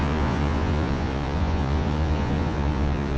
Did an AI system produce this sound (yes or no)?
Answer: yes